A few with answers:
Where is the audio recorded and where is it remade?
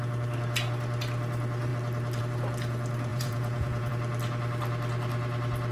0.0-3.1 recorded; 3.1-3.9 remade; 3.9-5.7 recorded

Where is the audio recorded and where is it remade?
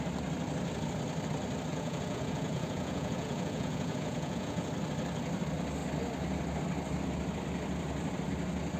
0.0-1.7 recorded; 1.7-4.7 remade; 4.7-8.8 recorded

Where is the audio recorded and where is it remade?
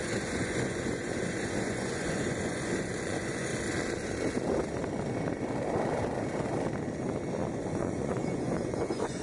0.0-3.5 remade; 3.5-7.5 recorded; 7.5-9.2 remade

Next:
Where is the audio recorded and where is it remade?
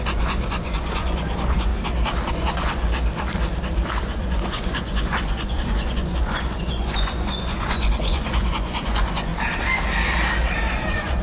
0.0-1.7 remade; 1.7-2.3 recorded; 2.3-2.9 remade; 2.9-4.0 recorded; 4.0-9.3 remade; 9.3-10.7 recorded; 10.7-11.2 remade